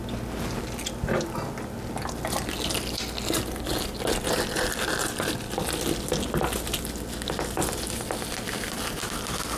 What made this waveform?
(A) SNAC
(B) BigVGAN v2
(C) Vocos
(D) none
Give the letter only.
D